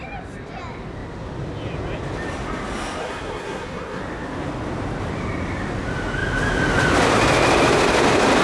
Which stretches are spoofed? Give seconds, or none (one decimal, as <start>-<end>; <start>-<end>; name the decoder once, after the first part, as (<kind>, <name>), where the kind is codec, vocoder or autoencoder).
3.0-4.0 (codec, SNAC)